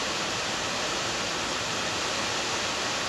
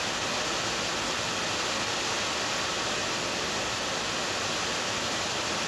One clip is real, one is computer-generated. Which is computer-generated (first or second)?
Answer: first